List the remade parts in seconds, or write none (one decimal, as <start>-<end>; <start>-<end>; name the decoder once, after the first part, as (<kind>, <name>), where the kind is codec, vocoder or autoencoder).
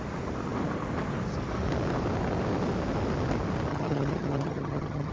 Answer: 3.7-5.1 (vocoder, HiFi-GAN)